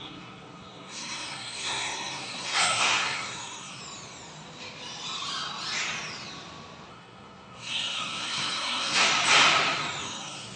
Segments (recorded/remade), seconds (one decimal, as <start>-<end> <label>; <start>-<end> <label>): 0.0-3.8 remade; 3.8-6.9 recorded; 6.9-9.1 remade; 9.1-10.0 recorded; 10.0-10.6 remade